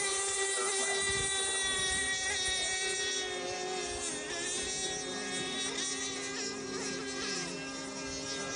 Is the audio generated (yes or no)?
no